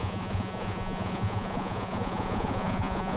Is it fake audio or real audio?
fake